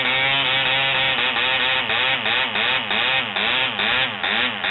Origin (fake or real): real